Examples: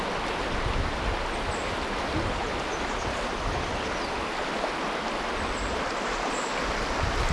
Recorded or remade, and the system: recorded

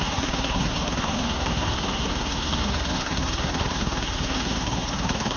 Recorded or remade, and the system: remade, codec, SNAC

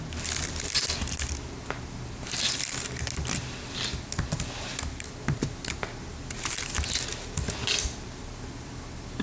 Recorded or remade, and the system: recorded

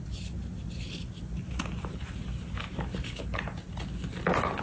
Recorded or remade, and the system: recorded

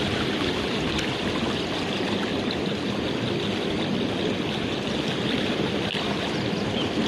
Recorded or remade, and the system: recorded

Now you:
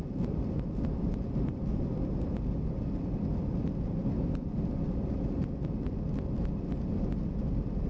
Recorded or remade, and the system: recorded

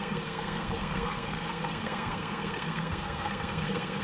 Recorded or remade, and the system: remade, codec, SNAC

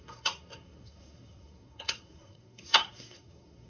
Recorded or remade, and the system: remade, codec, SNAC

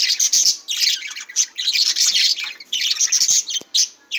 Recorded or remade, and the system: recorded